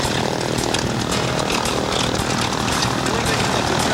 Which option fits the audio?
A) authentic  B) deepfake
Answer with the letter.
A